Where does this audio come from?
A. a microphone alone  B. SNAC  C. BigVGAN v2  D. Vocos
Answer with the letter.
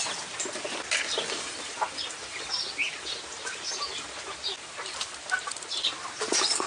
A